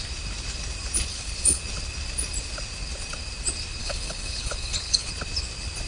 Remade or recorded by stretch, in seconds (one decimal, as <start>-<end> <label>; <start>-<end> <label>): 0.0-1.1 recorded; 1.1-1.6 remade; 1.6-3.8 recorded; 3.8-5.1 remade; 5.1-5.9 recorded